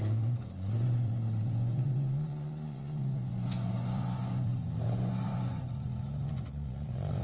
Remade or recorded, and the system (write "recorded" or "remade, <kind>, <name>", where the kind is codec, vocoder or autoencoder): remade, vocoder, Vocos